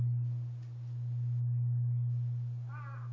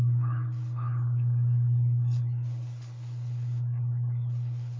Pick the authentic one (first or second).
first